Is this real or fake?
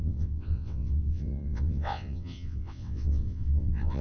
fake